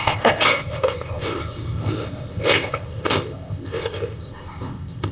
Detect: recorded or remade remade